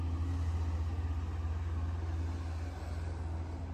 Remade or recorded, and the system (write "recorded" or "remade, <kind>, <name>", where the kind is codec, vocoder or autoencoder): recorded